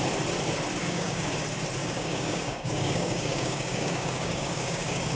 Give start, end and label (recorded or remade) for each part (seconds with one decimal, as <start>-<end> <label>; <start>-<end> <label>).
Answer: 0.0-0.8 recorded; 0.8-1.3 remade; 1.3-1.8 recorded; 1.8-5.2 remade